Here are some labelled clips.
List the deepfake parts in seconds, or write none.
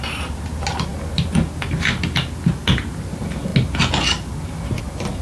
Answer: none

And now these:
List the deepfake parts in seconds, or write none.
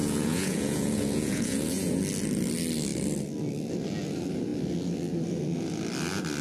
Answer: 0.0-2.0 (vocoder, Vocos)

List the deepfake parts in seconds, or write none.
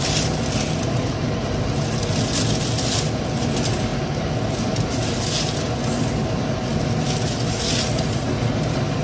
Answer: none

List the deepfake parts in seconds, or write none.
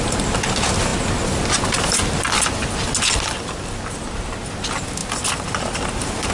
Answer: 5.0-6.3 (vocoder, BigVGAN v2)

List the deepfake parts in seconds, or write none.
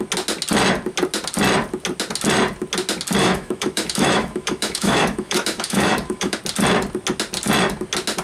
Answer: 3.2-6.4 (autoencoder, DAC-VAE)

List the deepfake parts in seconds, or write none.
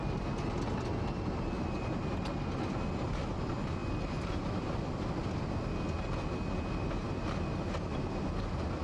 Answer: none